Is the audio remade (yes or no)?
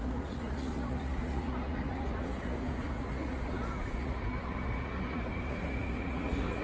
yes